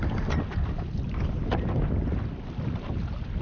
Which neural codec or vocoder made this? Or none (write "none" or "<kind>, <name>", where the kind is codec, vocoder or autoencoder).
none